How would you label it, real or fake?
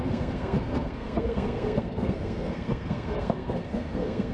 fake